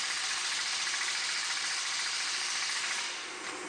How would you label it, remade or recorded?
remade